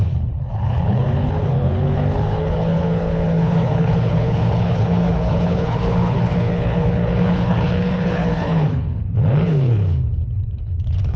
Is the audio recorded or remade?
remade